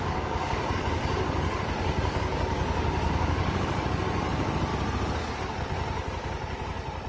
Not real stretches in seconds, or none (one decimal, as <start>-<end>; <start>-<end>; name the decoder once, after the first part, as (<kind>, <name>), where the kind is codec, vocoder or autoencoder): 0.0-4.7 (codec, DAC)